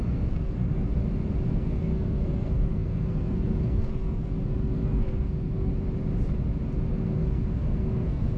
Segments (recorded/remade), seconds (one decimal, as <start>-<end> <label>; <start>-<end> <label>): 0.0-0.9 remade; 0.9-1.5 recorded; 1.5-5.7 remade; 5.7-6.9 recorded; 6.9-8.4 remade